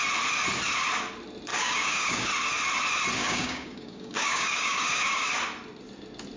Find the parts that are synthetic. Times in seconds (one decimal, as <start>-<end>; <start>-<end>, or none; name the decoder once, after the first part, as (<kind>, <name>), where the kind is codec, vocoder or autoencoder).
1.5-2.3 (codec, DAC); 3.2-5.3